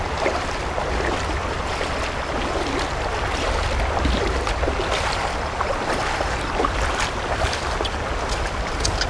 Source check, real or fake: real